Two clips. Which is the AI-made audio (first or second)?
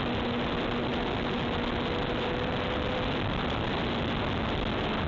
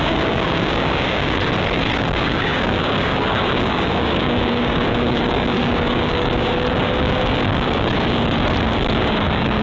second